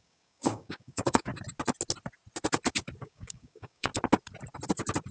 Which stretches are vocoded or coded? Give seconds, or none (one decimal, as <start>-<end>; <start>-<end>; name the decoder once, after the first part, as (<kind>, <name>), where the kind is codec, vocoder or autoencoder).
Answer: 0.0-1.3 (codec, DAC); 3.0-3.9